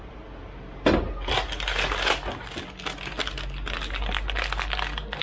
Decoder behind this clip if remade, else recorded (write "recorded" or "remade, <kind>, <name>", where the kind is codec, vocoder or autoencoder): recorded